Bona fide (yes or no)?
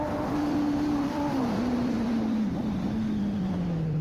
no